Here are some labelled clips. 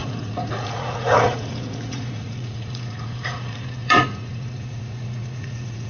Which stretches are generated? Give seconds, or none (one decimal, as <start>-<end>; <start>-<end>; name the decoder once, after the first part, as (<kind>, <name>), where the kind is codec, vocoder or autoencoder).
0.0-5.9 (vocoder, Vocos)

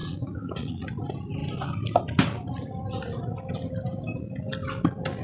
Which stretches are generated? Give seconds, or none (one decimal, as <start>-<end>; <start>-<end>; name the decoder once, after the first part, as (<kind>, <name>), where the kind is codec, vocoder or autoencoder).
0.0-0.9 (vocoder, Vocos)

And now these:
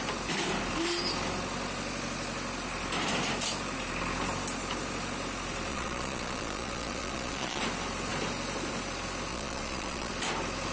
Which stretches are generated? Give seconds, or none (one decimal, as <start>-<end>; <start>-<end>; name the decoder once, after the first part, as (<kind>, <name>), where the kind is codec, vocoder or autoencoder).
5.7-7.6 (vocoder, Vocos); 9.3-10.1

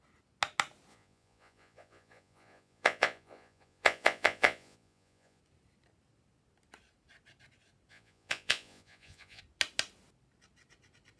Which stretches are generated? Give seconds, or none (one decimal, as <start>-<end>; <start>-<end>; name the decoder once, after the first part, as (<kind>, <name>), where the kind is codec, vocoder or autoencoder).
0.9-5.4 (vocoder, Vocos); 7.9-9.4

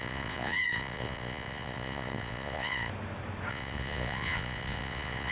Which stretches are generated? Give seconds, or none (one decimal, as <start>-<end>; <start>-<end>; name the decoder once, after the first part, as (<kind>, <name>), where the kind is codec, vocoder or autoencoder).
0.0-2.9 (vocoder, Vocos); 3.5-5.3